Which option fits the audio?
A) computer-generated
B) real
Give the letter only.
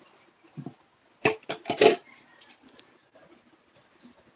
B